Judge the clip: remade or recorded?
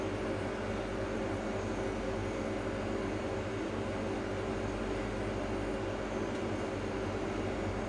recorded